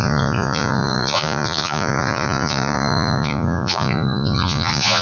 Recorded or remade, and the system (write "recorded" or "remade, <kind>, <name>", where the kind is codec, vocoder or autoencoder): remade, vocoder, Vocos